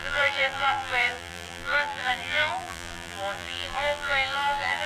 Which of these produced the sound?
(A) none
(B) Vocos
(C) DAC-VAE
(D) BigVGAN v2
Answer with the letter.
D